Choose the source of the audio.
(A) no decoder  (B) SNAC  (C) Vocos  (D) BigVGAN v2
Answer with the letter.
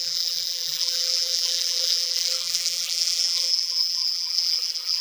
D